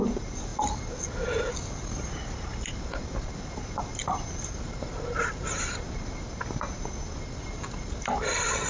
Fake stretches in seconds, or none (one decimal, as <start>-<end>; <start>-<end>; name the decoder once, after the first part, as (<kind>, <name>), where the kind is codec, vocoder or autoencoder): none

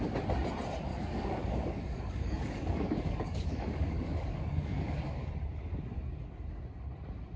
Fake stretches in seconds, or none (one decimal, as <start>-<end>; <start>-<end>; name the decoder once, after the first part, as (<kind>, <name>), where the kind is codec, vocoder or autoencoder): 0.9-5.3 (codec, DAC)

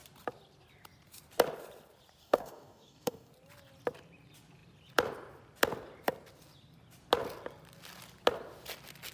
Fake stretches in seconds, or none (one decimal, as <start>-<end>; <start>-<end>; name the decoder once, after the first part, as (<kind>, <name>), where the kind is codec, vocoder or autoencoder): 2.2-3.3 (codec, DAC)